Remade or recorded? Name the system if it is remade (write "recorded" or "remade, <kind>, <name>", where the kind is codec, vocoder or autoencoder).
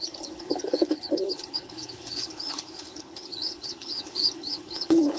remade, codec, HILCodec